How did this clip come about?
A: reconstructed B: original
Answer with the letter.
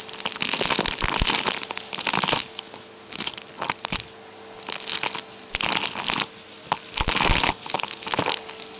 B